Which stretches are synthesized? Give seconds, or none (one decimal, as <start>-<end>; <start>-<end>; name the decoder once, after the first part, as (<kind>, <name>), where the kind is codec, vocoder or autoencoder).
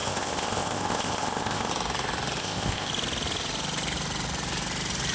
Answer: 0.0-1.7 (codec, ZipCodec); 2.4-2.9